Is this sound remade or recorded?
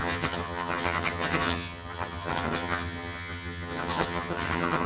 remade